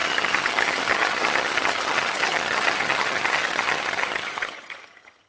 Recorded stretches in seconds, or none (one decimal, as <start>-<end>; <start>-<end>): none